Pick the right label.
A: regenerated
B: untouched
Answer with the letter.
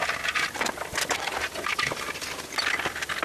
B